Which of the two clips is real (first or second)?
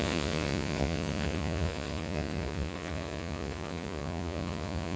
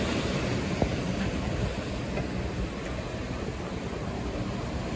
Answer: second